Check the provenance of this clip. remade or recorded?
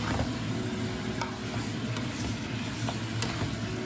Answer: recorded